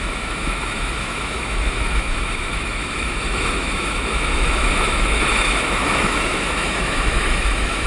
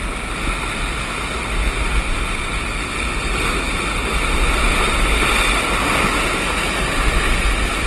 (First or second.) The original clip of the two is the second